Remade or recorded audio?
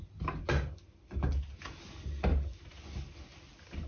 recorded